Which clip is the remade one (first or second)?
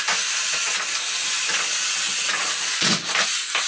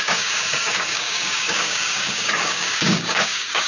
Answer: second